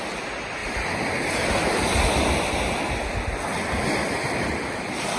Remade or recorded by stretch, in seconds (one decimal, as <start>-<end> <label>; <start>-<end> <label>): 0.0-5.2 recorded